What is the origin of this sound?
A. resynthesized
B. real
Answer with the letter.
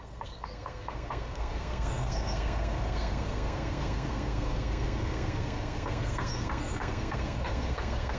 A